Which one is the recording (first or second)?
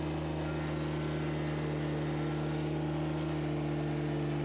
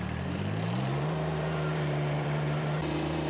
first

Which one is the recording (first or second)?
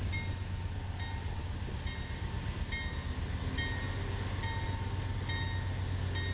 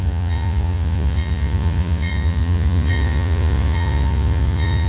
first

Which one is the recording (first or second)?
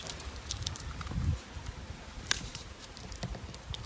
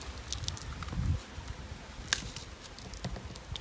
second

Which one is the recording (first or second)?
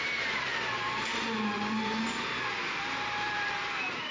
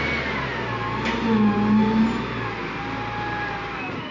second